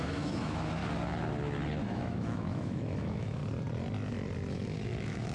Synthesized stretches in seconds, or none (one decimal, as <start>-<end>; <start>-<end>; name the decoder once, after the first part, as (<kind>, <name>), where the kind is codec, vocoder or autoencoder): 0.0-0.8 (autoencoder, DAC-VAE); 1.8-3.4; 4.5-5.3